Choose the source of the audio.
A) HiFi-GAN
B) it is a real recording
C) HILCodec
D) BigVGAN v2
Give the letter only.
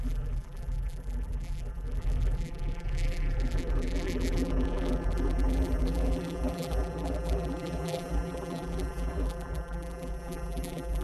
D